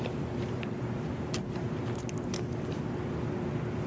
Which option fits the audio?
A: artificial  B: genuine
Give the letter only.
B